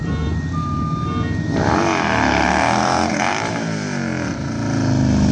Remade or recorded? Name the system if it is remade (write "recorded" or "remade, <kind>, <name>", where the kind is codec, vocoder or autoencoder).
recorded